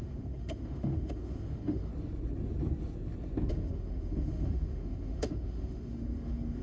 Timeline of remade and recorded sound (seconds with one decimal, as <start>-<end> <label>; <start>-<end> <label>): 0.0-1.9 remade; 1.9-3.5 recorded; 3.5-6.6 remade